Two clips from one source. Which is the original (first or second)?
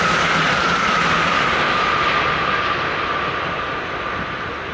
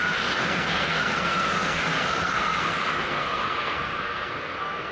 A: first